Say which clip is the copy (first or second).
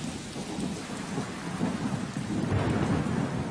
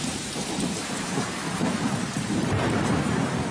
second